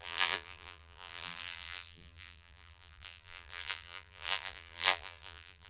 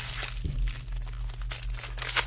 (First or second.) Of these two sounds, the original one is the second